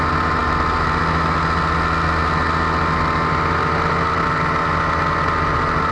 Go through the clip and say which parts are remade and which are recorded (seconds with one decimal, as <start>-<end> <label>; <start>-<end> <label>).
0.0-5.9 recorded